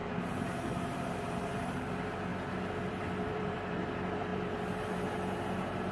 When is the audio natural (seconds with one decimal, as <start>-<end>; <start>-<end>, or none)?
2.3-2.8